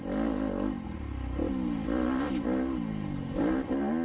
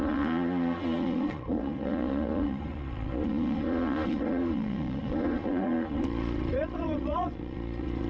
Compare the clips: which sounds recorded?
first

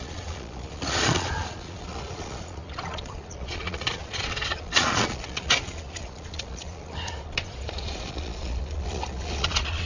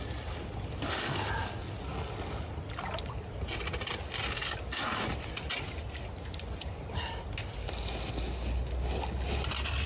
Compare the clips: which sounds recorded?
second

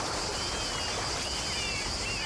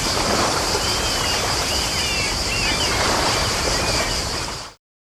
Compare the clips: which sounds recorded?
first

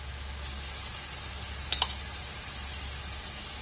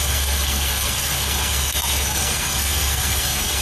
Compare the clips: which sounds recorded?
first